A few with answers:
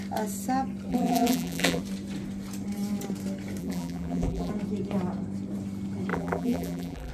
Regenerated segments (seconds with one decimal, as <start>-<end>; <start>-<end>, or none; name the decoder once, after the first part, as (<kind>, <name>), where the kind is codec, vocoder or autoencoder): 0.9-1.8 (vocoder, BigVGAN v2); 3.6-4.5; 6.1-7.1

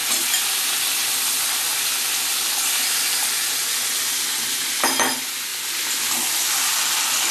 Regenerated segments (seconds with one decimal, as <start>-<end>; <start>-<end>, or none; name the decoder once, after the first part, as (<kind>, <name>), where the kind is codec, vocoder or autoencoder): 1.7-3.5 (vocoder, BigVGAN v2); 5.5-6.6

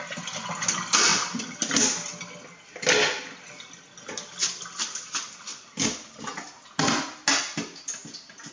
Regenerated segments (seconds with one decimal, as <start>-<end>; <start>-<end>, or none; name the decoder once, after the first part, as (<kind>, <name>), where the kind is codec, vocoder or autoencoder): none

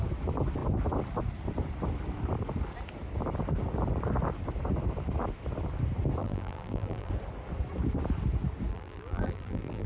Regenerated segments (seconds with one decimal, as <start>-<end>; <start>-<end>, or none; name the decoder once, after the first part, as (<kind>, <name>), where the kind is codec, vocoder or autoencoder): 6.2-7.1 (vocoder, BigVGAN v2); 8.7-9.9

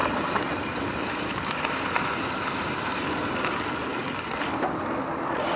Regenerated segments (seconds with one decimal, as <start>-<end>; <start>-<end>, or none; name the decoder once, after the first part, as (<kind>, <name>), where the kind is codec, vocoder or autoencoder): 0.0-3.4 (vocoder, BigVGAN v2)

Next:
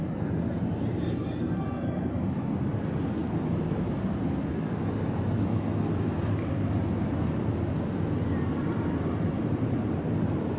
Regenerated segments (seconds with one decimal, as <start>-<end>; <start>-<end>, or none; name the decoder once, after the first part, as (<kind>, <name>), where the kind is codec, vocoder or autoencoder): 0.0-3.2 (vocoder, BigVGAN v2); 8.5-10.6

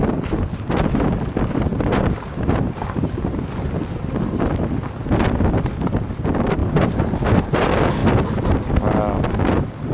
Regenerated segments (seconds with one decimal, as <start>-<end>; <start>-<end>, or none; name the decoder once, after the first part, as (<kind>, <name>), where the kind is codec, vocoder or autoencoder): 1.7-3.4 (vocoder, BigVGAN v2); 6.6-7.6

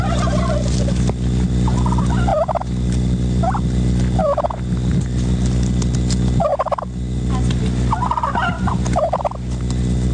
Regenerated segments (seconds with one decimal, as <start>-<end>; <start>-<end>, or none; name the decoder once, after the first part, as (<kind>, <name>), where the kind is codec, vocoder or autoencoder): 2.3-3.4 (vocoder, BigVGAN v2); 6.5-7.6